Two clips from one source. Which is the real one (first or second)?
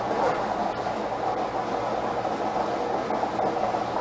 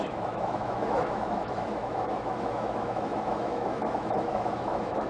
first